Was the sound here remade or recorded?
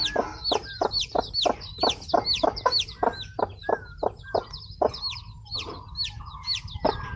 recorded